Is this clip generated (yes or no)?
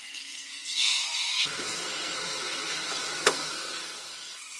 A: yes